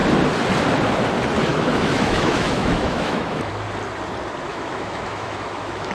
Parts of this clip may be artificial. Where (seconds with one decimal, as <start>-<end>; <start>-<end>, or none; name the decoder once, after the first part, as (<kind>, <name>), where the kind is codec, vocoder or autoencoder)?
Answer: 1.5-3.5 (autoencoder, DAC-VAE); 4.5-5.9